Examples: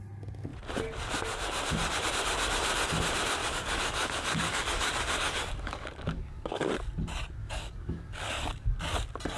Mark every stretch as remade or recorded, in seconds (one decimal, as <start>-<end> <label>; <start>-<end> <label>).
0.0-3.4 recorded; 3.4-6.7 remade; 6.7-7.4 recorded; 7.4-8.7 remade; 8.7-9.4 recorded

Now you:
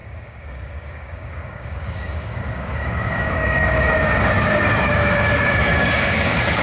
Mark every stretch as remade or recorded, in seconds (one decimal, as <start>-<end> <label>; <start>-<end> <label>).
0.0-6.6 remade

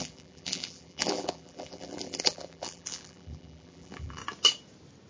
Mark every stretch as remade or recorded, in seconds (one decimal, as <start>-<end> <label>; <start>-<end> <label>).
0.0-4.2 remade; 4.2-5.1 recorded

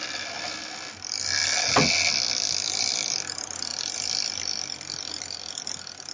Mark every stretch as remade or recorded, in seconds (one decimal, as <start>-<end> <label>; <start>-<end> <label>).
0.0-6.1 recorded